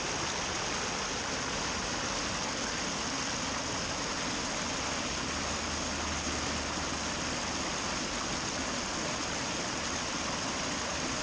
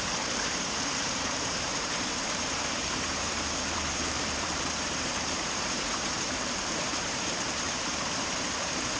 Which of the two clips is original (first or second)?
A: first